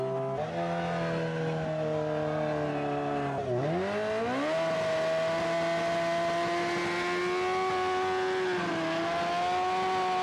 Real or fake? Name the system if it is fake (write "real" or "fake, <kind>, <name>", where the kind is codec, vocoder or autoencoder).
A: real